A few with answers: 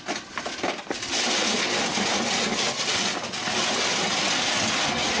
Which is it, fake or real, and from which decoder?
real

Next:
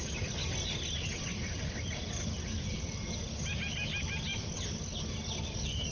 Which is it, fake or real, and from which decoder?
real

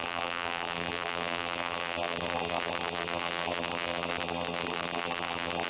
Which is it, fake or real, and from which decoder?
fake, vocoder, BigVGAN v2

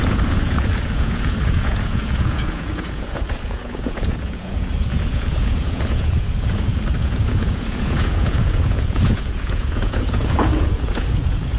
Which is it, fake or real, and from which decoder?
fake, vocoder, Vocos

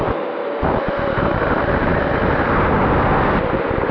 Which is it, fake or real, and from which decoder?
real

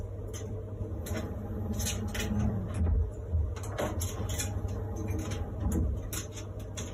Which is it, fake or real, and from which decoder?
real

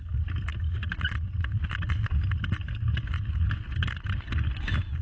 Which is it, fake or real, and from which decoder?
real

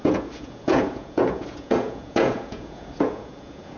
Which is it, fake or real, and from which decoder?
fake, vocoder, Vocos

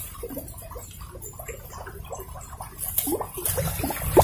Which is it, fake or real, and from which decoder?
real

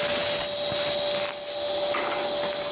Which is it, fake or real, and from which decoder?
real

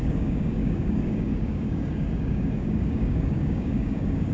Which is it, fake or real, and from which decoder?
fake, codec, DAC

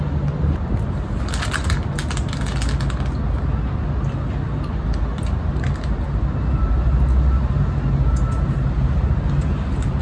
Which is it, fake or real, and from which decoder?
real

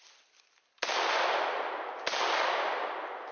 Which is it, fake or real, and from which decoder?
real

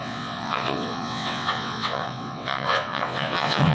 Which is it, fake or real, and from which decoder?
fake, vocoder, WaveNeXt